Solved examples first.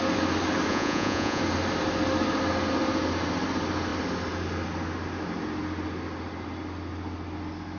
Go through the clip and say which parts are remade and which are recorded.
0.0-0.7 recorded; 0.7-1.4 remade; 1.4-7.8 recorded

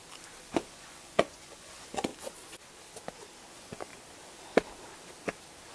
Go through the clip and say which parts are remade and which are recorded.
0.0-0.7 recorded; 0.7-2.1 remade; 2.1-3.5 recorded; 3.5-3.9 remade; 3.9-5.7 recorded